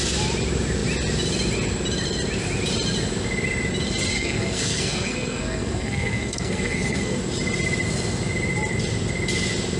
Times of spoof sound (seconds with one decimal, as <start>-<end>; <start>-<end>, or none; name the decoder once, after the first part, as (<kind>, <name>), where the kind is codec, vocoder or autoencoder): 4.1-7.2 (codec, SNAC)